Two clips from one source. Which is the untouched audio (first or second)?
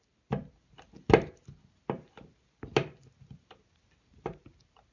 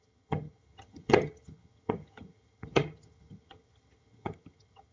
first